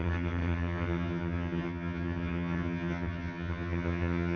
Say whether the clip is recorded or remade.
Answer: remade